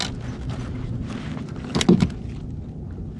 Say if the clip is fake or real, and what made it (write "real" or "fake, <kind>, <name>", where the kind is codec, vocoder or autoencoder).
real